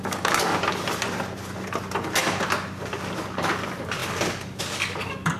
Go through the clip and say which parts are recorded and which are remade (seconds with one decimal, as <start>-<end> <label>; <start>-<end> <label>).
0.0-0.5 remade; 0.5-3.2 recorded; 3.2-5.4 remade